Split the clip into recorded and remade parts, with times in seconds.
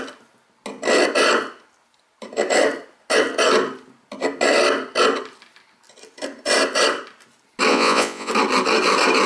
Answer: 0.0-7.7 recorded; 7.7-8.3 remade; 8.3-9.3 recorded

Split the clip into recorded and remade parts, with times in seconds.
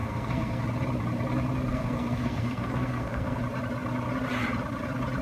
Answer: 0.0-0.6 remade; 0.6-1.7 recorded; 1.7-3.4 remade; 3.4-5.2 recorded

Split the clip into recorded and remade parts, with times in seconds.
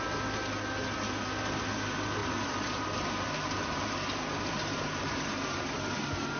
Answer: 0.0-2.2 recorded; 2.2-5.6 remade; 5.6-6.4 recorded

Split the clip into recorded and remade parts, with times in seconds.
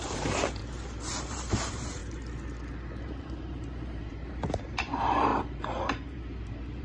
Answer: 0.0-0.6 remade; 0.6-1.2 recorded; 1.2-2.0 remade; 2.0-3.0 recorded; 3.0-6.8 remade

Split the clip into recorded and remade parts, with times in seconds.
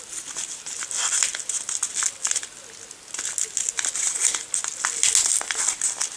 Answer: 0.0-6.2 recorded